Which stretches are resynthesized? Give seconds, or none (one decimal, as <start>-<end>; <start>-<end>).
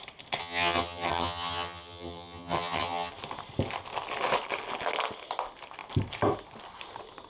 0.4-3.1